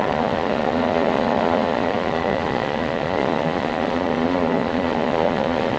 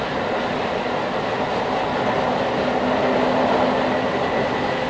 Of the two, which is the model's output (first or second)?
first